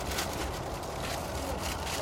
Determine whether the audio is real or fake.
real